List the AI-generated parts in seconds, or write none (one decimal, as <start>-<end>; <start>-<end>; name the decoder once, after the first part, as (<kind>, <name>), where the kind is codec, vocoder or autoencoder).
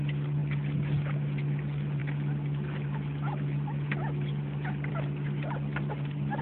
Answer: none